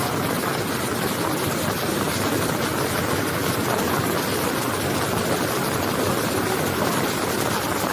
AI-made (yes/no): no